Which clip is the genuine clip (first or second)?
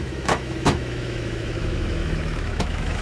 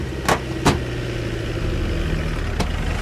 second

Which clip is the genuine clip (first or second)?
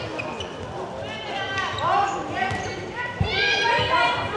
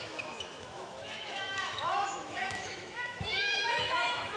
first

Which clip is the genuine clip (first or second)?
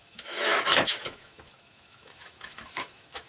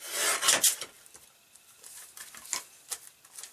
second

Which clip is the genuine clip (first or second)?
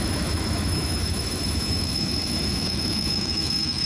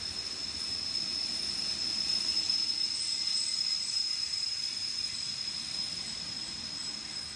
second